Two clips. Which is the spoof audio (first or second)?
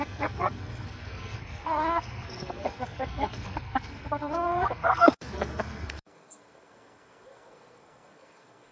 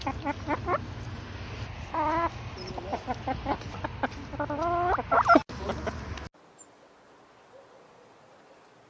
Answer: first